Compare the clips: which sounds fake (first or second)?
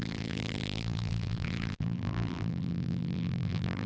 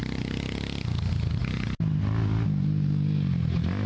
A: first